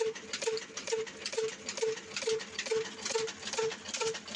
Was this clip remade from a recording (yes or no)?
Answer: no